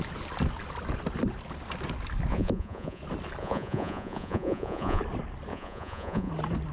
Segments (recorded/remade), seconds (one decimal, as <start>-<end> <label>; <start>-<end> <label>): 0.0-2.3 recorded; 2.3-3.0 remade; 3.0-3.4 recorded; 3.4-5.0 remade; 5.0-5.5 recorded; 5.5-6.3 remade; 6.3-6.7 recorded